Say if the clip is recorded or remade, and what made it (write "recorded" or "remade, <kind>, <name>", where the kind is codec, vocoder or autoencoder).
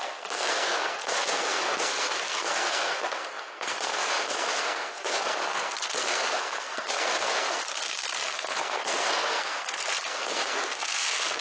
remade, codec, SNAC